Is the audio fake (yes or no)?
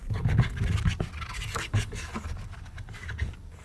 yes